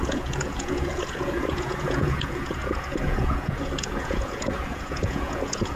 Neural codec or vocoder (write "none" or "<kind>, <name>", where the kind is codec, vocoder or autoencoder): vocoder, Vocos